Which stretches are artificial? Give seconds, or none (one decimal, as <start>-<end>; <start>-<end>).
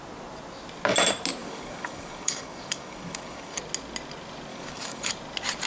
1.4-3.6; 4.5-5.1